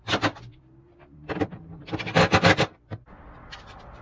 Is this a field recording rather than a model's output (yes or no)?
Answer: no